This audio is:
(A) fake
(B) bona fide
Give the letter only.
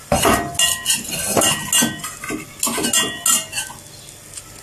B